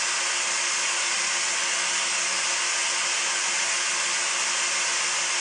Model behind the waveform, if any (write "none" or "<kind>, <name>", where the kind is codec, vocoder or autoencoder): none